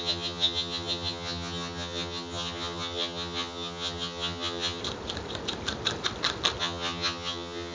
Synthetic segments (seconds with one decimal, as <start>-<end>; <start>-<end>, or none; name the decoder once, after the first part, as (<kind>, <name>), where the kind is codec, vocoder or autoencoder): 0.0-4.8 (vocoder, HiFi-GAN); 6.6-7.7

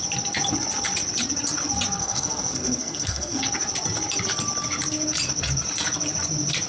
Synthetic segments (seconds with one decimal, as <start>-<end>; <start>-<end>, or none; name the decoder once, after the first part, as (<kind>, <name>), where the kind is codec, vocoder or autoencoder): 2.0-3.4 (codec, SNAC)

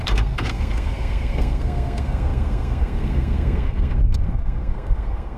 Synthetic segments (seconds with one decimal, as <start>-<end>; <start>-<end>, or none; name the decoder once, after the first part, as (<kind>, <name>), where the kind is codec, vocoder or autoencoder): 0.0-5.4 (codec, SNAC)

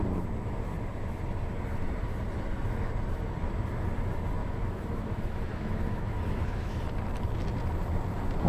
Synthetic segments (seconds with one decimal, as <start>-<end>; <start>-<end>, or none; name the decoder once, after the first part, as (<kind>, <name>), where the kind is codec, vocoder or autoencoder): 4.4-6.8 (autoencoder, DAC-VAE)